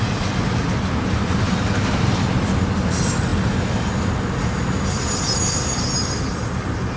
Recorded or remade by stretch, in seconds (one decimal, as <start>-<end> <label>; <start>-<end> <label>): 0.0-7.0 recorded

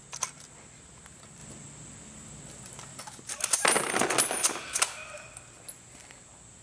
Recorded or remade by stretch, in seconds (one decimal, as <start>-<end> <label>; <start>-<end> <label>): 0.0-6.6 recorded

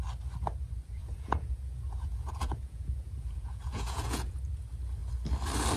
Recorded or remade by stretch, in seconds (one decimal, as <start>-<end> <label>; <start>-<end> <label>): 0.0-1.0 recorded; 1.0-4.4 remade; 4.4-5.8 recorded

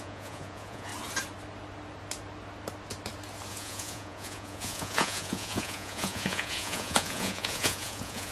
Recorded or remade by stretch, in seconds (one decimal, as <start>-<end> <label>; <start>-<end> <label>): 0.0-0.9 remade; 0.9-3.5 recorded; 3.5-8.3 remade

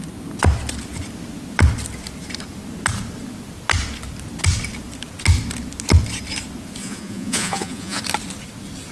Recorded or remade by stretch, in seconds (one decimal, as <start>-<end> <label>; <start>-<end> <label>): 0.0-6.8 recorded; 6.8-8.0 remade; 8.0-8.9 recorded

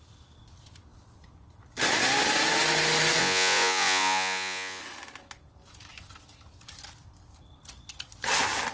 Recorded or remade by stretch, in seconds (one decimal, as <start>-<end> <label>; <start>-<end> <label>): 0.0-3.2 recorded; 3.2-4.8 remade; 4.8-8.7 recorded